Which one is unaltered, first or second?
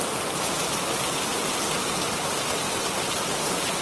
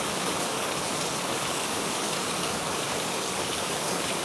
first